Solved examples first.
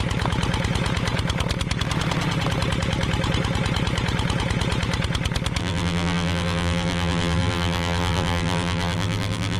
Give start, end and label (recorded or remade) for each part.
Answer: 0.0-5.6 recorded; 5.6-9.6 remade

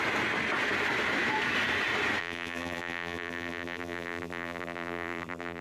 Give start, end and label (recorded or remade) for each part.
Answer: 0.0-2.2 recorded; 2.2-5.6 remade